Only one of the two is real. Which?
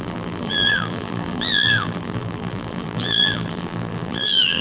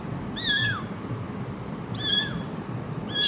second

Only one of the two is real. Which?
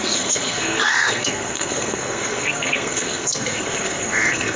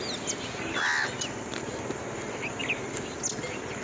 second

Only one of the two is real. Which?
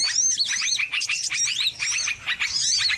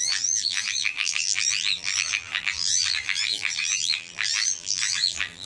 first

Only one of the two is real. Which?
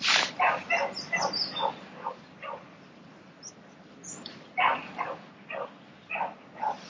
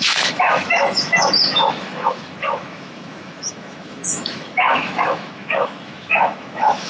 first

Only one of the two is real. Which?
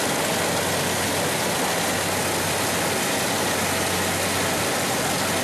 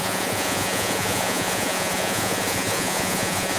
first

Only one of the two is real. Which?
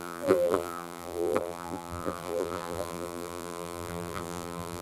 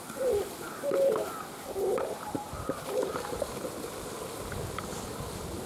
second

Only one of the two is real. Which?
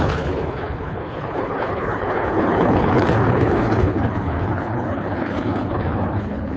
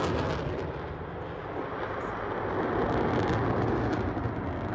second